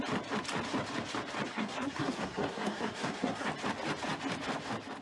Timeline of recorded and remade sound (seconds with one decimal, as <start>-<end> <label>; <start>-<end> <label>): 0.0-1.5 recorded; 1.5-3.5 remade; 3.5-5.0 recorded